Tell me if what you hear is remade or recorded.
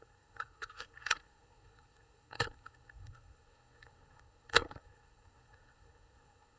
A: remade